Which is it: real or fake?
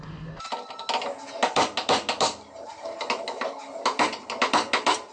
real